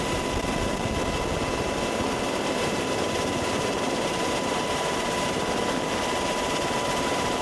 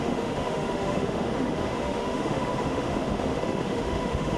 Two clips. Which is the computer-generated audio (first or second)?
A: second